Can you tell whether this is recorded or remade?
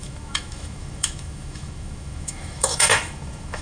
remade